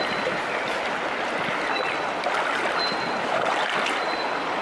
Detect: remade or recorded recorded